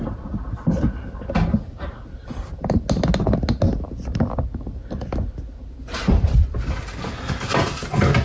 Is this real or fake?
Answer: real